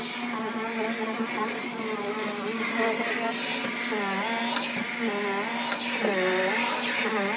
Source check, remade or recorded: recorded